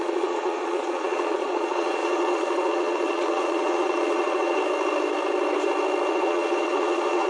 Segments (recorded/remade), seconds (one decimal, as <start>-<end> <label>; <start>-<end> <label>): 0.0-4.6 remade; 4.6-6.1 recorded; 6.1-7.3 remade